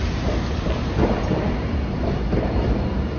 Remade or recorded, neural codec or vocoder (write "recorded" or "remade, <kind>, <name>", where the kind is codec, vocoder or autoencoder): recorded